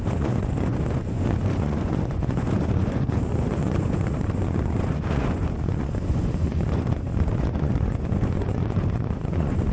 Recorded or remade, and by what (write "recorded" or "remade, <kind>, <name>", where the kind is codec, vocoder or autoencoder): remade, vocoder, Vocos